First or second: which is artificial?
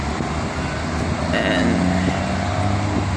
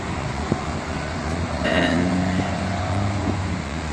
second